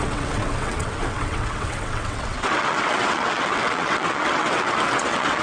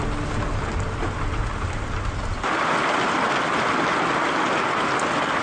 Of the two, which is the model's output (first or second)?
first